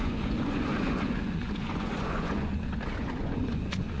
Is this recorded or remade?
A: remade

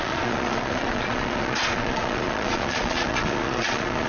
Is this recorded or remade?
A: remade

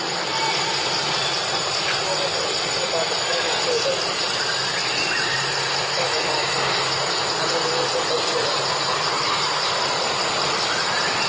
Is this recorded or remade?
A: recorded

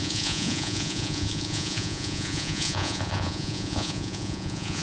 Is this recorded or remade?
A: remade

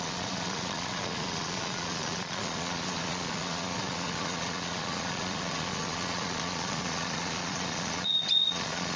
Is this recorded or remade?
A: remade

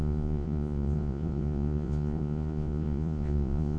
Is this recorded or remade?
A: remade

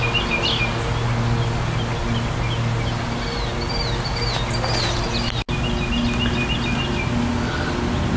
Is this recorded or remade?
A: recorded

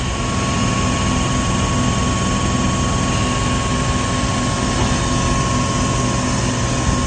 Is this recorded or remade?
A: recorded